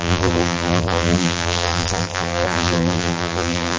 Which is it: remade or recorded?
remade